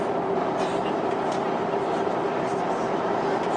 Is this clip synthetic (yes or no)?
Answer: no